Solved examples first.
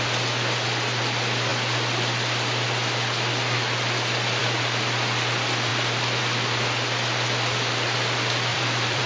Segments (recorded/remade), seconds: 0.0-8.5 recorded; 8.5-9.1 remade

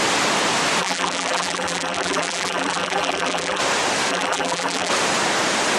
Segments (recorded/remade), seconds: 0.0-0.8 recorded; 0.8-3.6 remade; 3.6-4.1 recorded; 4.1-4.9 remade; 4.9-5.8 recorded

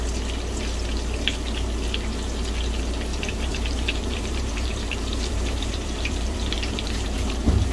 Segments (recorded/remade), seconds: 0.0-3.1 recorded; 3.1-7.3 remade; 7.3-7.7 recorded

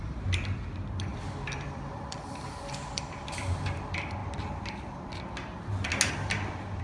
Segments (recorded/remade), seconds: 0.0-1.1 recorded; 1.1-3.4 remade; 3.4-6.8 recorded

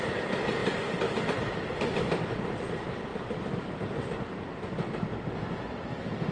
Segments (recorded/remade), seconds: 0.0-3.1 remade; 3.1-5.6 recorded; 5.6-6.3 remade

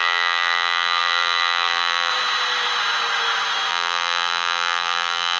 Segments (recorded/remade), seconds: 0.0-2.1 remade; 2.1-3.7 recorded; 3.7-5.4 remade